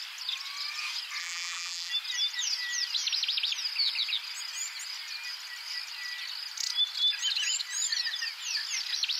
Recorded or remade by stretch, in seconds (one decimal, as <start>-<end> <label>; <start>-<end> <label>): 0.0-1.2 recorded; 1.2-1.9 remade; 1.9-9.2 recorded